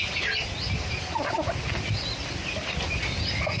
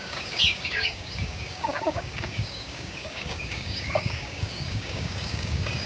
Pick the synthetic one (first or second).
second